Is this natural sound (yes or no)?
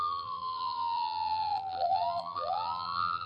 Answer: no